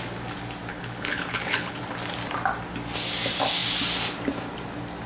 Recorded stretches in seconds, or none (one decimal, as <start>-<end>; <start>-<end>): 0.0-0.7; 1.8-5.1